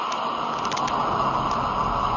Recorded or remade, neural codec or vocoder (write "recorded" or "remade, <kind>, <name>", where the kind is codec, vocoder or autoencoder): recorded